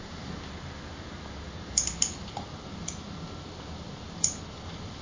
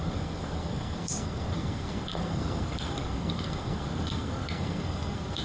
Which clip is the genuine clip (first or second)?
first